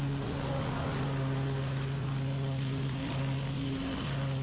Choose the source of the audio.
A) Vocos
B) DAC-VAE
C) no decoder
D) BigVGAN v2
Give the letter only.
C